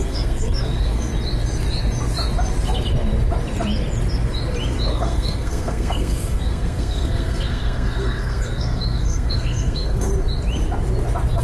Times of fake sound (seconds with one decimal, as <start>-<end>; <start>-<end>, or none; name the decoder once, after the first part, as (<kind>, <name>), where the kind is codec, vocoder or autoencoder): 0.0-1.1 (codec, SNAC); 4.9-10.1